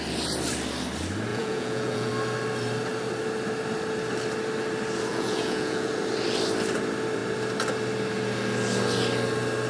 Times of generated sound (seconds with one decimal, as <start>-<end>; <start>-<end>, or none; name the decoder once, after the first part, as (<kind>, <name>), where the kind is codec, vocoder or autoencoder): 1.3-2.1 (vocoder, Vocos); 5.1-5.9